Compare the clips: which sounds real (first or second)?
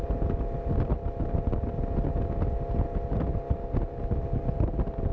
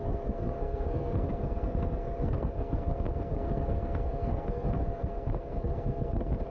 first